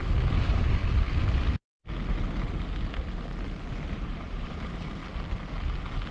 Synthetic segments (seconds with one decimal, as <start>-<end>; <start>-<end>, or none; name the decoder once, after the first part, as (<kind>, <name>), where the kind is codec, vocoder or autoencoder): 0.0-0.8 (vocoder, BigVGAN v2); 3.7-5.0